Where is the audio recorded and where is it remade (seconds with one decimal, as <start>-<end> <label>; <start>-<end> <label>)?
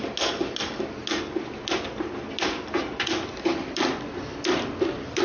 0.0-5.2 recorded